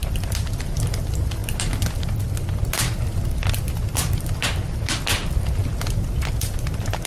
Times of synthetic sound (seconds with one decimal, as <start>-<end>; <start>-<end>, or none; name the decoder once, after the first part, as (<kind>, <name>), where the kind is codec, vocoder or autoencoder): 0.0-0.8 (vocoder, BigVGAN v2)